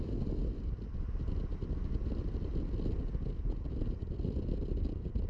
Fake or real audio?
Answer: real